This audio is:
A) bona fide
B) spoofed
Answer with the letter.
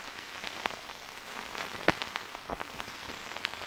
B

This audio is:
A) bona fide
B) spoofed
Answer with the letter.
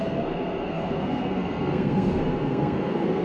B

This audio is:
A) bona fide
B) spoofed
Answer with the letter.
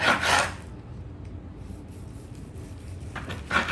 A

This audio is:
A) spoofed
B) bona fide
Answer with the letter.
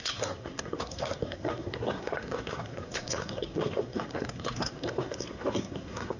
A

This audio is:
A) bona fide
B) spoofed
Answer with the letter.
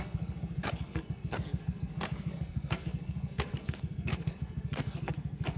B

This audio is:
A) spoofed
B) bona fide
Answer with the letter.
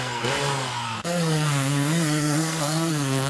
A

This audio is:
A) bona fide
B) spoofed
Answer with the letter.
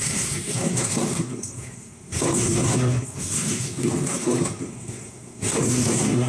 B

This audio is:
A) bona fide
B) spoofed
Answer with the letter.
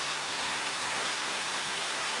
B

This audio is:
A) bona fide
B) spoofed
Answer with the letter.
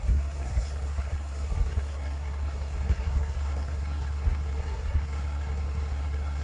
B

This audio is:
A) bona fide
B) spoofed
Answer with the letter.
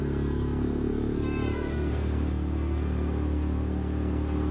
B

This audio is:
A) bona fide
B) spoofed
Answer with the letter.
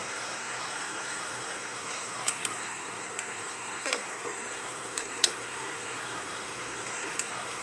B